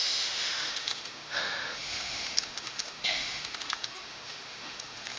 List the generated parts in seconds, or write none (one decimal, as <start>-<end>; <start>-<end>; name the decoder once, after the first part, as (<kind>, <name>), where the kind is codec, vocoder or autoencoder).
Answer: 0.0-5.2 (autoencoder, DAC-VAE)